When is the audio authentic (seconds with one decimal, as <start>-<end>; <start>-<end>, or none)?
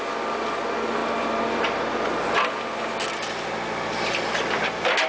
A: 0.0-5.1